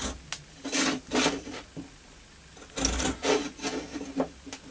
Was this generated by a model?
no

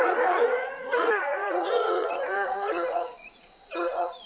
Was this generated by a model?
yes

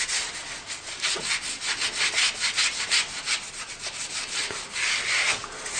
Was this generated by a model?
no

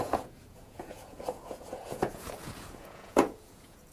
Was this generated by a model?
yes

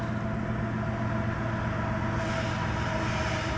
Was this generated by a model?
no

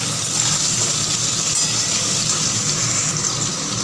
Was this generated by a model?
no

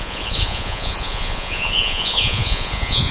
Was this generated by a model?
yes